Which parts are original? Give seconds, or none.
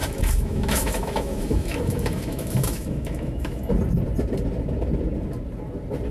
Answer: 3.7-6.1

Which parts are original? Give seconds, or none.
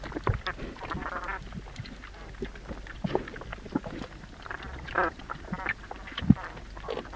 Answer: 0.0-7.2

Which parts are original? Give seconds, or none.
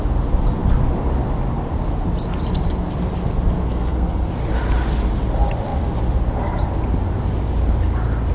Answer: 0.0-3.6; 4.3-8.3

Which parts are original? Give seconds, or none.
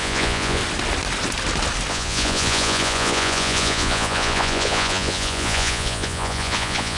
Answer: 0.6-1.9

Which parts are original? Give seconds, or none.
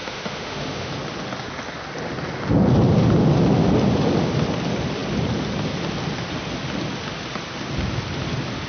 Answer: 0.9-8.7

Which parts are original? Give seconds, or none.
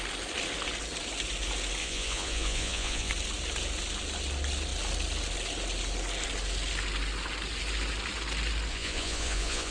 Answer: 0.0-1.8; 3.1-8.7